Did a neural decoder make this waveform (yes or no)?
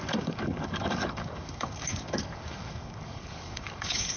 yes